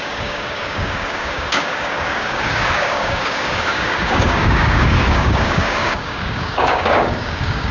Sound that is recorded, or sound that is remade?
remade